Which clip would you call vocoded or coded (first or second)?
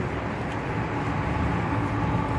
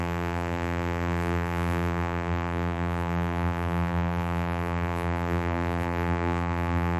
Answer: second